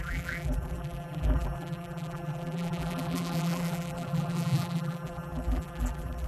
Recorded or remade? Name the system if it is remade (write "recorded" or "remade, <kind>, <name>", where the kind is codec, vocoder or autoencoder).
remade, vocoder, BigVGAN v2